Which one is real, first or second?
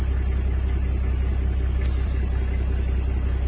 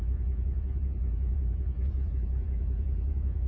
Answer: first